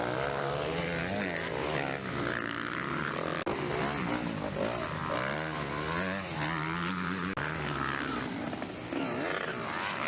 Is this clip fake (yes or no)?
no